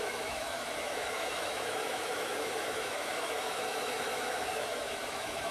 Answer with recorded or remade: remade